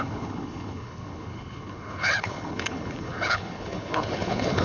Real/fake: fake